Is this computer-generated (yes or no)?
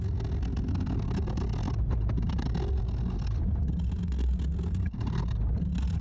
no